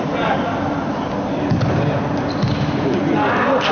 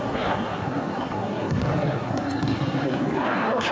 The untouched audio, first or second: first